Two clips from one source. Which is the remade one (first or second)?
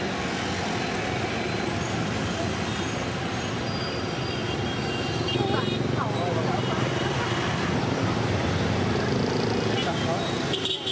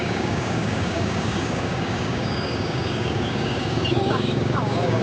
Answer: second